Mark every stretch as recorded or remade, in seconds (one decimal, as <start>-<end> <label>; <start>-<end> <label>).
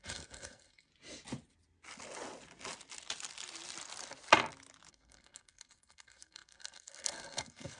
0.0-0.9 remade; 0.9-4.9 recorded; 4.9-7.8 remade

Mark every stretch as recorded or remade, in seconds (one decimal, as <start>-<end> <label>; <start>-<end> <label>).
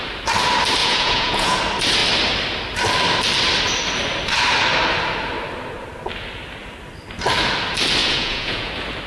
0.0-0.8 recorded; 0.8-1.6 remade; 1.6-8.0 recorded; 8.0-8.7 remade; 8.7-9.1 recorded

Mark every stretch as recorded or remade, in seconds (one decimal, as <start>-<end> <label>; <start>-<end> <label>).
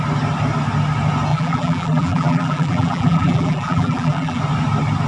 0.0-1.3 recorded; 1.3-4.4 remade; 4.4-5.1 recorded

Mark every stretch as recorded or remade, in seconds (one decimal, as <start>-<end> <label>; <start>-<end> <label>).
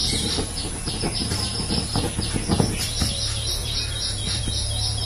0.0-3.6 recorded; 3.6-4.4 remade; 4.4-5.1 recorded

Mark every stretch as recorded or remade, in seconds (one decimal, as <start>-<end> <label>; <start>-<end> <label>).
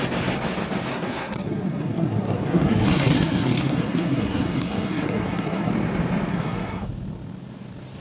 0.0-0.9 recorded; 0.9-5.7 remade; 5.7-6.3 recorded; 6.3-6.9 remade; 6.9-8.0 recorded